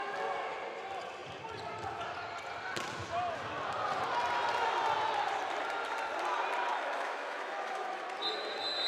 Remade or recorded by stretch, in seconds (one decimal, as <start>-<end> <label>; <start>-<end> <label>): 0.0-6.7 recorded; 6.7-7.9 remade; 7.9-8.9 recorded